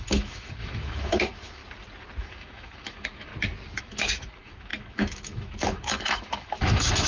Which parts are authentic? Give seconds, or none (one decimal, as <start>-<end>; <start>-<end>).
1.6-2.2; 3.3-3.8